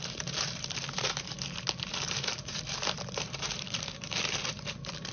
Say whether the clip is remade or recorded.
remade